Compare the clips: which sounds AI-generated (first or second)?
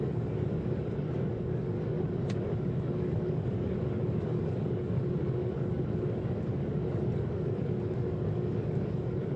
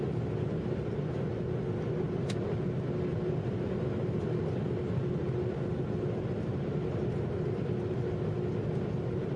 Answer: first